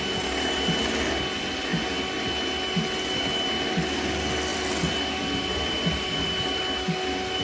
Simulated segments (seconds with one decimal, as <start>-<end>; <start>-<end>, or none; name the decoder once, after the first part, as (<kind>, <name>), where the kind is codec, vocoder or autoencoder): 4.5-6.6 (vocoder, BigVGAN v2)